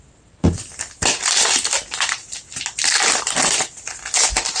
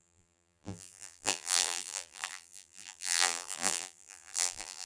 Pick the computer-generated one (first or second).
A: second